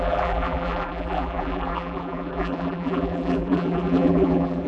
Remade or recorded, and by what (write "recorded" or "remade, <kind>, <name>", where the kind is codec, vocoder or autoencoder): remade, vocoder, BigVGAN v2